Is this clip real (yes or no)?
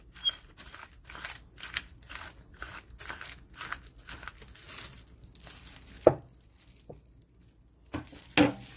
yes